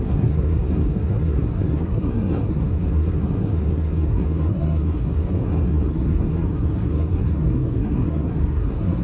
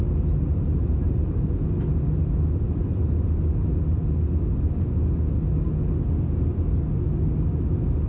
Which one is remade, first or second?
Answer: first